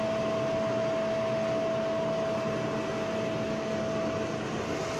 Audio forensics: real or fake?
real